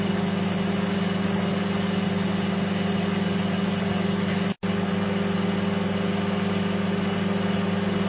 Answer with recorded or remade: recorded